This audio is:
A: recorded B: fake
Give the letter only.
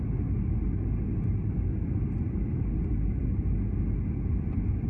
A